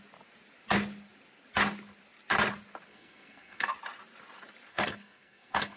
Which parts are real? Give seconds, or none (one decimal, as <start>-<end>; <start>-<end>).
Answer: 0.0-2.9; 3.7-4.7